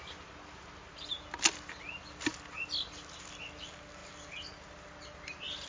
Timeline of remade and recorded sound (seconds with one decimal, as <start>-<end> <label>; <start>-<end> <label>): 0.0-5.7 recorded